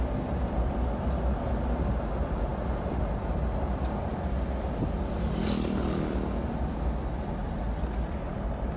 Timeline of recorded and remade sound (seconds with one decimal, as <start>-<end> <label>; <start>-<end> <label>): 0.0-8.8 recorded